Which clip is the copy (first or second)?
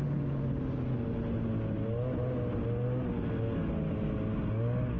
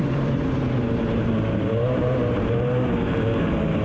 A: second